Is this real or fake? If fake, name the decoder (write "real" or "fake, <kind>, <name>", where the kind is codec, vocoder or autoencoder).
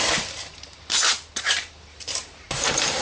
fake, vocoder, BigVGAN v2